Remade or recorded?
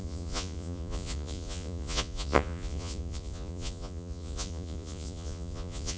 remade